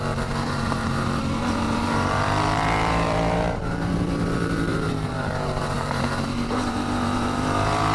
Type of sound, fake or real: fake